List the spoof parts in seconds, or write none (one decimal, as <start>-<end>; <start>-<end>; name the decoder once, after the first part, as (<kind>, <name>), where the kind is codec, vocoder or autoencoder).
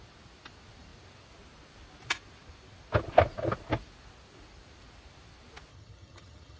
5.7-6.6 (vocoder, HiFi-GAN)